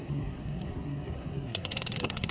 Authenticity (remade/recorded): remade